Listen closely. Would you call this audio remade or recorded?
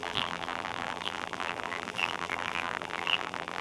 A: remade